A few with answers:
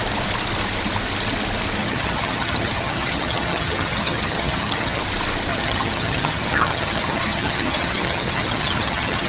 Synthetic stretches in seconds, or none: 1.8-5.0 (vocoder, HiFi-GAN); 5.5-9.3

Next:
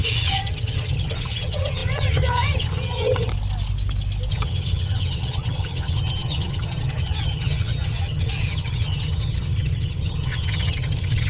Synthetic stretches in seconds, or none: 0.0-3.3 (vocoder, HiFi-GAN); 4.3-11.3

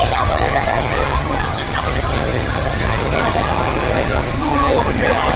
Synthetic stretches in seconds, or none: 0.0-5.4 (vocoder, HiFi-GAN)

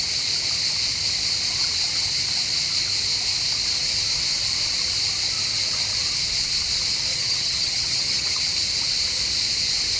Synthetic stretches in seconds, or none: 7.1-8.4 (vocoder, HiFi-GAN)

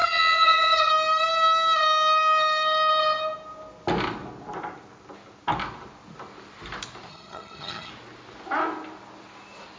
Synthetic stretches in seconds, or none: 0.0-0.9 (vocoder, HiFi-GAN); 7.1-7.9

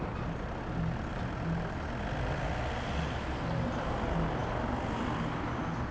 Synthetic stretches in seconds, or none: none

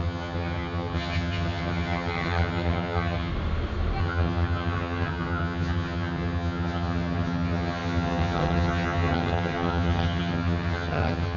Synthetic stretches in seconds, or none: 0.0-3.3 (vocoder, HiFi-GAN); 4.0-11.4